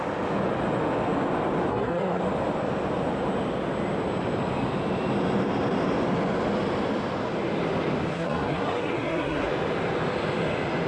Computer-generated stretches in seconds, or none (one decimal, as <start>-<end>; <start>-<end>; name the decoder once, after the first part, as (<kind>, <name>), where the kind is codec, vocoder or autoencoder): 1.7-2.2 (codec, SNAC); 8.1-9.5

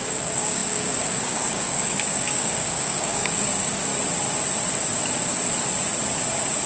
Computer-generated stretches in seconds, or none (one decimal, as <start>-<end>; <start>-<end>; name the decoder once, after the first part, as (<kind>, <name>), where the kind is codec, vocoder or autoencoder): 0.0-3.9 (codec, DAC)

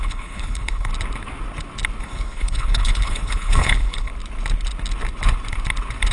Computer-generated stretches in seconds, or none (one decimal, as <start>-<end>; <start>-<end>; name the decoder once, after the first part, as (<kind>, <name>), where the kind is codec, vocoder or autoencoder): 0.0-0.9 (codec, HILCodec); 2.0-4.1

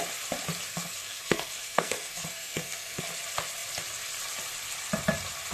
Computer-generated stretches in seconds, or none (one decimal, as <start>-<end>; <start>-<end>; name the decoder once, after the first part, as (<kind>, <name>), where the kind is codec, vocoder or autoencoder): 0.7-3.0 (codec, SNAC)